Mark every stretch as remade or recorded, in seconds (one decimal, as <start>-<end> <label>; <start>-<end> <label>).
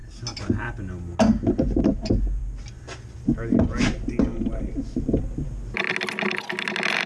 0.0-7.1 recorded